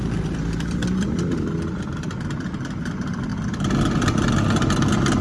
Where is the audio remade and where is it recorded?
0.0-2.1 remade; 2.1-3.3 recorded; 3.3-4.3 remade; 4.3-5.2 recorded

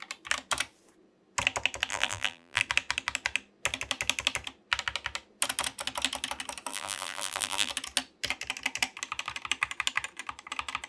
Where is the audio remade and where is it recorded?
0.0-1.9 recorded; 1.9-2.6 remade; 2.6-6.7 recorded; 6.7-7.7 remade; 7.7-10.9 recorded

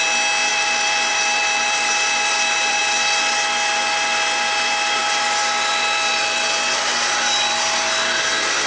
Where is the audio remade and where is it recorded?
0.0-0.5 recorded; 0.5-2.8 remade; 2.8-5.0 recorded; 5.0-6.7 remade; 6.7-8.7 recorded

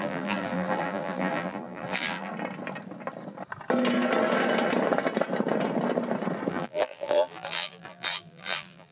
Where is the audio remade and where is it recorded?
0.0-2.3 remade; 2.3-6.5 recorded; 6.5-8.9 remade

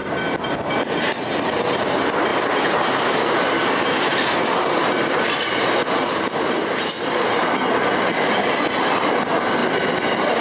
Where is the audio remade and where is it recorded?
0.0-1.5 remade; 1.5-2.3 recorded; 2.3-3.5 remade; 3.5-4.1 recorded; 4.1-8.1 remade; 8.1-9.6 recorded; 9.6-10.4 remade

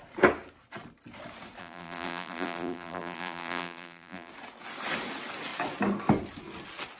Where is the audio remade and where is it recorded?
0.0-1.6 recorded; 1.6-4.3 remade; 4.3-7.0 recorded